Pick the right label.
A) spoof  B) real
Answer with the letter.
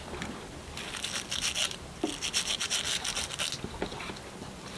B